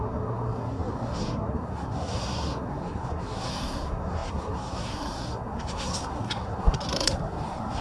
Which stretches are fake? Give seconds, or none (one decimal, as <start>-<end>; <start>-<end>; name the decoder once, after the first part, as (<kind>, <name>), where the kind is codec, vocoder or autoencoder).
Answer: 0.0-7.8 (codec, SNAC)